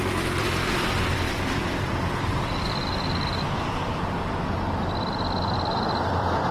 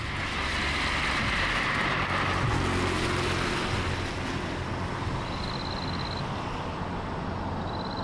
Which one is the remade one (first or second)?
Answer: first